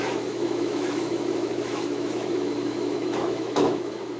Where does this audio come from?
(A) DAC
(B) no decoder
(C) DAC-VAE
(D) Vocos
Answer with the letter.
C